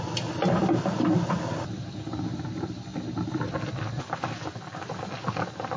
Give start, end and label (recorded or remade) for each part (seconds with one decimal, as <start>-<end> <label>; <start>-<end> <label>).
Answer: 0.0-5.8 recorded